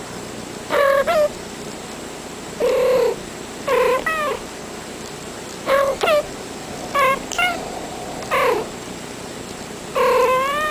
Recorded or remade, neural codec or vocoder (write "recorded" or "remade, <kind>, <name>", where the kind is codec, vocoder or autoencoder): remade, vocoder, BigVGAN v2